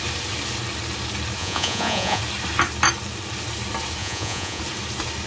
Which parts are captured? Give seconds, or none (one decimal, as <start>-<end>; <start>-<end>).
0.0-1.4; 2.2-4.0; 4.6-5.3